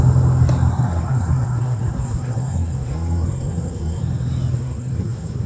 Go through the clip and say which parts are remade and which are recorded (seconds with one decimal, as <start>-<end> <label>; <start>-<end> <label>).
0.0-0.7 recorded; 0.7-4.0 remade; 4.0-4.5 recorded; 4.5-5.5 remade